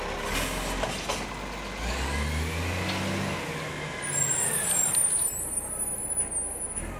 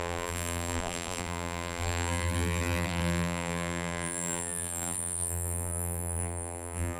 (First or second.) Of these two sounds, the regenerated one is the second